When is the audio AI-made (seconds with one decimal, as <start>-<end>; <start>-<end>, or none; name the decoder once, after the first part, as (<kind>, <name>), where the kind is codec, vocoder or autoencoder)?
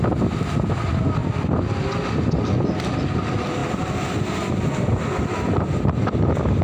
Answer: none